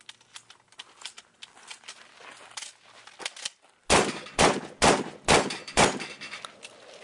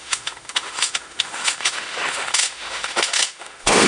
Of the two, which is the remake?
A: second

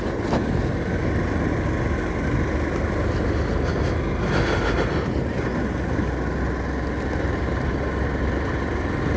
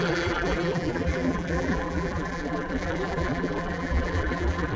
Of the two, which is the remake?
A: second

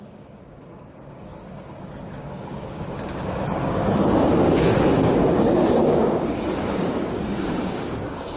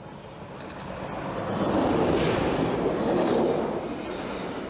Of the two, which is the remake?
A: first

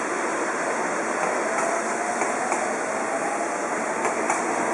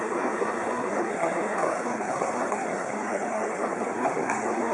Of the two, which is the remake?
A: second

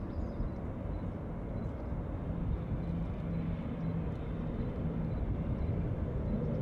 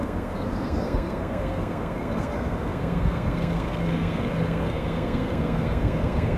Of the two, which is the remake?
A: second